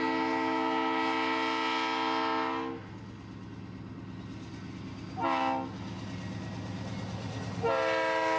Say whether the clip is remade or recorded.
recorded